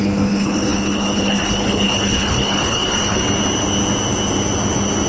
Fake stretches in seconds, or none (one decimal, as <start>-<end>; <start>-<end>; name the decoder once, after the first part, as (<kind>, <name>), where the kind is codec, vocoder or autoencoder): 0.0-3.2 (codec, HILCodec)